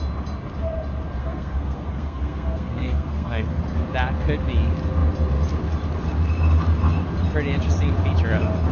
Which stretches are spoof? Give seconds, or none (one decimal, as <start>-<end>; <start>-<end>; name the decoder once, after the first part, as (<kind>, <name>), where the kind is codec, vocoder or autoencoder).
1.2-3.6 (codec, SNAC)